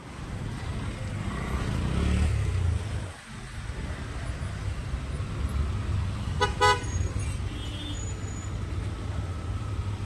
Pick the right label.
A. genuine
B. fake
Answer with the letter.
A